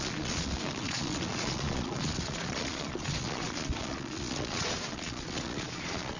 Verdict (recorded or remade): remade